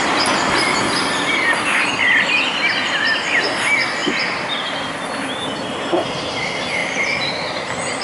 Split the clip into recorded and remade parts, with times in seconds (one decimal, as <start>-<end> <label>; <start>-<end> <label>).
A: 0.0-6.8 recorded; 6.8-8.0 remade